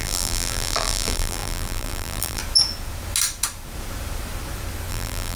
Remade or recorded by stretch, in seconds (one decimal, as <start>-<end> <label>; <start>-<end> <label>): 0.0-2.4 remade; 2.4-4.9 recorded; 4.9-5.4 remade

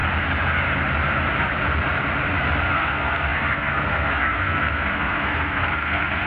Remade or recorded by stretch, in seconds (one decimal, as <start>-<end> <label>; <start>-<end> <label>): 0.0-2.6 recorded; 2.6-6.3 remade

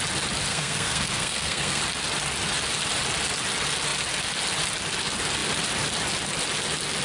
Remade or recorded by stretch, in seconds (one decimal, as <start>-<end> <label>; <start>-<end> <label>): 0.0-0.5 recorded; 0.5-1.8 remade; 1.8-7.0 recorded

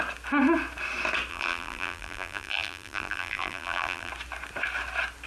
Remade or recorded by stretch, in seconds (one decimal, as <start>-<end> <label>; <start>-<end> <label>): 0.0-1.3 recorded; 1.3-4.1 remade; 4.1-5.3 recorded

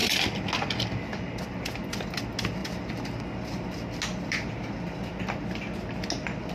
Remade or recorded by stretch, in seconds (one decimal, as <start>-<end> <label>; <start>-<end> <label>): 0.0-6.5 recorded

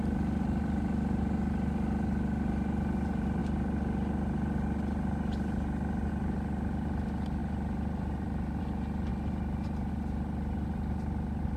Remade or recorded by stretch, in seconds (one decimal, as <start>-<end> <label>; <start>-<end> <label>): 0.0-11.6 recorded

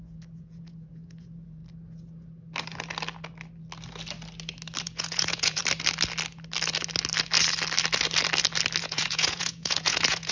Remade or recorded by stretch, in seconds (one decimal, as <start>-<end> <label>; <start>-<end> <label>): 0.0-1.6 remade; 1.6-4.8 recorded; 4.8-5.6 remade; 5.6-8.8 recorded; 8.8-10.3 remade